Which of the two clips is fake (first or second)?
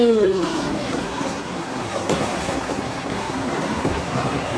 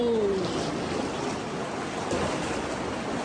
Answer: first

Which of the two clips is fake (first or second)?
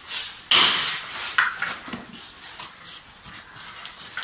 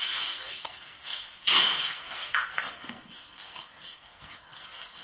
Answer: second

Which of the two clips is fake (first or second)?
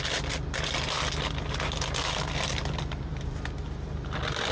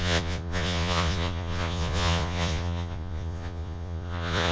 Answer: second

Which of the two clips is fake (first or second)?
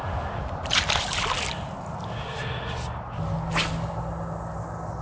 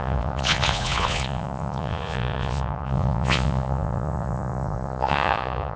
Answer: second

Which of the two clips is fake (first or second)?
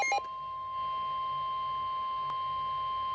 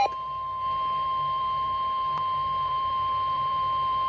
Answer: second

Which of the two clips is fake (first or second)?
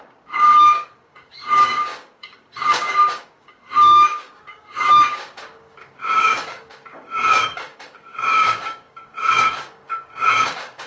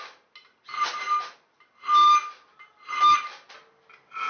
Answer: first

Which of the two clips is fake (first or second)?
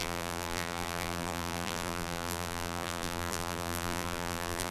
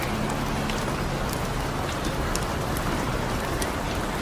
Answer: first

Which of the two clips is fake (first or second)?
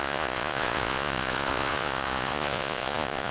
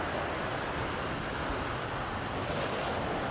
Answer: first